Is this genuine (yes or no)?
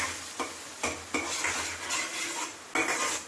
yes